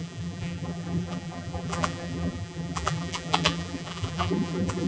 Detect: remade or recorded remade